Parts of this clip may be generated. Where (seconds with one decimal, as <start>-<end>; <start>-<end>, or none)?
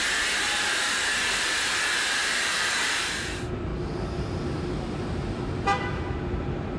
0.0-3.7; 4.5-6.8